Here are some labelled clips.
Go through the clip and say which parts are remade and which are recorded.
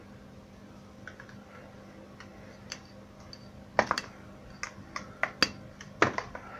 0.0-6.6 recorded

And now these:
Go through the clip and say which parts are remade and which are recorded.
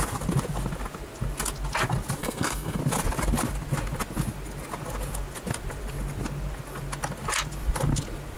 0.0-2.2 recorded; 2.2-2.8 remade; 2.8-8.4 recorded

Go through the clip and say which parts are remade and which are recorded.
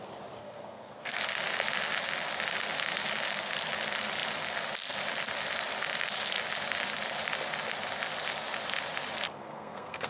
0.0-0.4 recorded; 0.4-1.2 remade; 1.2-9.3 recorded; 9.3-10.1 remade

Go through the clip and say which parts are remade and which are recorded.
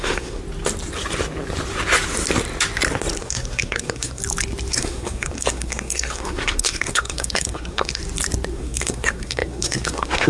0.0-0.4 remade; 0.4-3.2 recorded; 3.2-4.2 remade; 4.2-4.7 recorded; 4.7-8.0 remade; 8.0-8.5 recorded; 8.5-10.3 remade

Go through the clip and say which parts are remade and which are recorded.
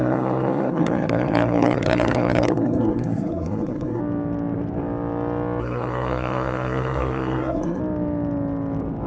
0.0-4.0 remade; 4.0-5.6 recorded; 5.6-7.8 remade; 7.8-9.1 recorded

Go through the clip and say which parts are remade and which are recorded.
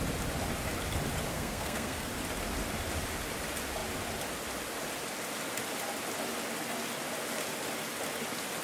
0.0-1.3 recorded; 1.3-2.1 remade; 2.1-8.6 recorded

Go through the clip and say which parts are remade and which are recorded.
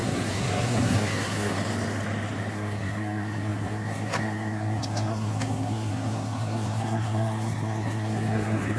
0.0-1.6 remade; 1.6-2.5 recorded; 2.5-8.8 remade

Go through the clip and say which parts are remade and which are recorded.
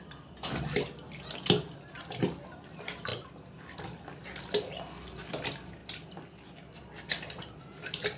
0.0-8.2 recorded